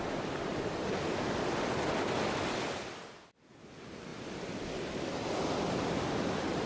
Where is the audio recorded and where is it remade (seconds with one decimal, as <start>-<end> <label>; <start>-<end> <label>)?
0.0-6.7 recorded